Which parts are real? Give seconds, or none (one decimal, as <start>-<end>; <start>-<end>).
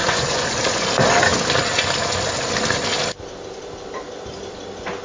0.9-5.0